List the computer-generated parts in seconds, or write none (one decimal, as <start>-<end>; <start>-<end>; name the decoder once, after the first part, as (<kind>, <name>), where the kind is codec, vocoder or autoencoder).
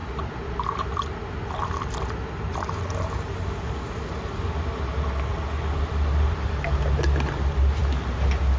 none